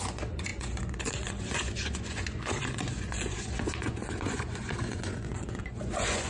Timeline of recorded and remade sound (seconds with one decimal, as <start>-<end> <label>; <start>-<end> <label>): 0.0-6.3 remade